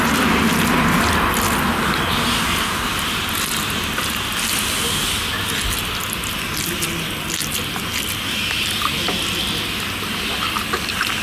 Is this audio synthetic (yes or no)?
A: no